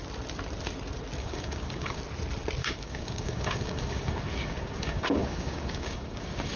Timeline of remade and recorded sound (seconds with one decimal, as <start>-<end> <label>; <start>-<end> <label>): 0.0-1.2 recorded; 1.2-2.0 remade; 2.0-2.6 recorded; 2.6-6.6 remade